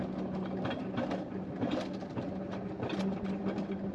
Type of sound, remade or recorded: recorded